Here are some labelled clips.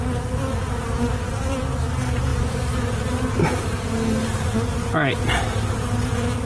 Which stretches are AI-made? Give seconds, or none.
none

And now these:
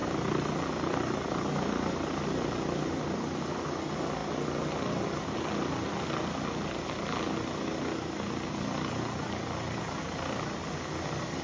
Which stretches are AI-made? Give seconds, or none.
none

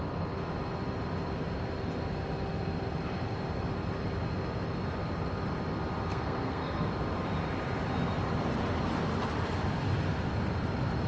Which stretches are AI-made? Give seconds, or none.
6.1-6.9 (codec, SNAC)

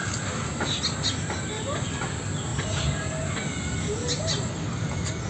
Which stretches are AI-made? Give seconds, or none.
none

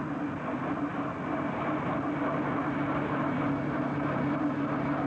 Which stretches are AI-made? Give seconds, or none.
none

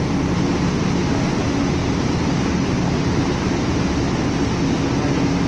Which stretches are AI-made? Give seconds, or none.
1.8-3.9 (vocoder, BigVGAN v2)

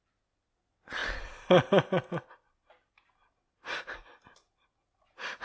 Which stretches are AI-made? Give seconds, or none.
none

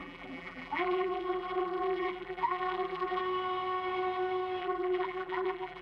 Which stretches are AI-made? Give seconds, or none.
0.0-3.2 (vocoder, BigVGAN v2); 4.6-5.8